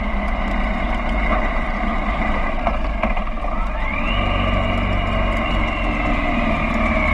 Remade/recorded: recorded